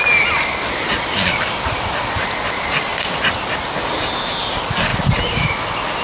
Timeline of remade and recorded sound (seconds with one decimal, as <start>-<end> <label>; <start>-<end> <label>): 0.0-4.9 recorded; 4.9-5.5 remade; 5.5-6.0 recorded